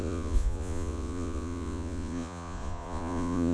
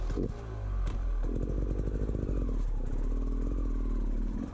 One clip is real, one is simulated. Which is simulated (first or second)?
first